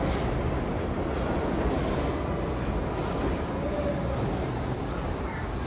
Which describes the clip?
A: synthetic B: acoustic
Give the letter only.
B